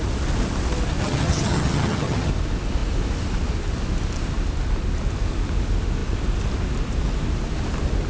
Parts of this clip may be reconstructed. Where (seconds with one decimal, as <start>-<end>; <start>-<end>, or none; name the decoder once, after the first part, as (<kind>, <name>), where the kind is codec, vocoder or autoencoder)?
1.0-2.3 (vocoder, HiFi-GAN)